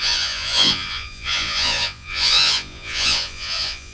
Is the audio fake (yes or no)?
yes